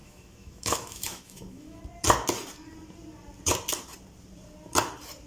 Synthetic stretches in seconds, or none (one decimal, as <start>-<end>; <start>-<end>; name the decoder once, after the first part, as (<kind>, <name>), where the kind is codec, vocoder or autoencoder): 0.0-1.8 (autoencoder, DAC-VAE)